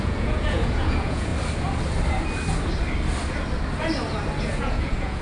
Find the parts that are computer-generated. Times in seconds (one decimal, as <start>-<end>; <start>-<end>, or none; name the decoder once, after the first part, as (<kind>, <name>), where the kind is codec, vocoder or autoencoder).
0.0-1.3 (vocoder, Vocos); 4.4-5.2